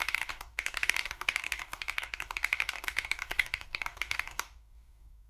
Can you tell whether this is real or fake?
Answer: fake